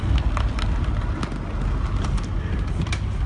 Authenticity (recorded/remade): recorded